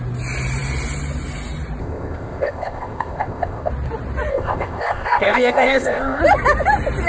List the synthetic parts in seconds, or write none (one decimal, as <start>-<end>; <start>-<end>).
1.8-3.7; 4.3-6.2